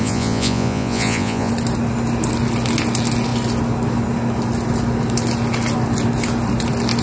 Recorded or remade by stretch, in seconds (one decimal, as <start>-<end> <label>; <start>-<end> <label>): 0.0-1.5 remade; 1.5-7.0 recorded